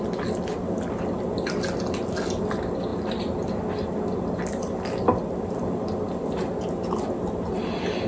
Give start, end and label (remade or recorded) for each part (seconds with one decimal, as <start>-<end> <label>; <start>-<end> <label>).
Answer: 0.0-8.1 recorded